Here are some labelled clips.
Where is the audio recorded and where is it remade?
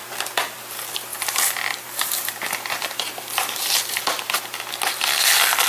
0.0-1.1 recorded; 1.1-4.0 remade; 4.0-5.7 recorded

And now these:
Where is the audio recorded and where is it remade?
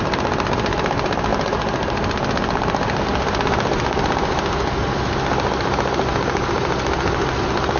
0.0-7.8 recorded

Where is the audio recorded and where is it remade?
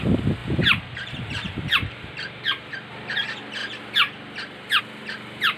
0.0-0.4 recorded; 0.4-2.7 remade; 2.7-5.6 recorded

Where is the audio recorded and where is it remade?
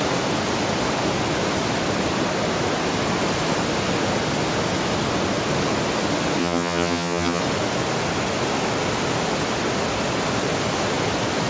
0.0-6.4 recorded; 6.4-7.4 remade; 7.4-11.5 recorded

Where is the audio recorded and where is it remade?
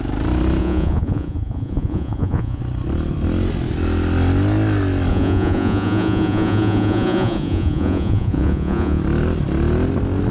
0.0-0.6 recorded; 0.6-2.6 remade; 2.6-5.1 recorded; 5.1-9.0 remade; 9.0-10.3 recorded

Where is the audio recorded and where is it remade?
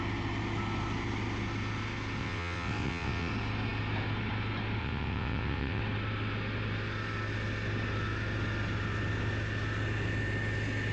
0.0-2.2 recorded; 2.2-3.3 remade; 3.3-4.8 recorded; 4.8-5.8 remade; 5.8-10.9 recorded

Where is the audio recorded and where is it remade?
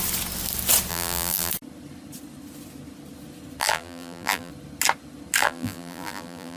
0.0-0.9 recorded; 0.9-1.5 remade; 1.5-3.6 recorded; 3.6-4.5 remade; 4.5-5.4 recorded; 5.4-6.6 remade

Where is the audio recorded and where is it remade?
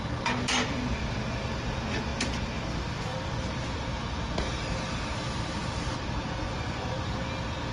0.0-6.4 recorded; 6.4-7.1 remade; 7.1-7.7 recorded